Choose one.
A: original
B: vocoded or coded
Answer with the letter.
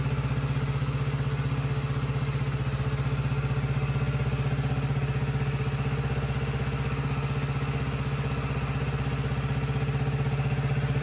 A